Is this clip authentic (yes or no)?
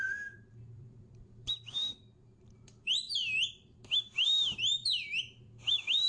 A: no